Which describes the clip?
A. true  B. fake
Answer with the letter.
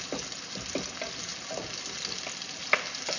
A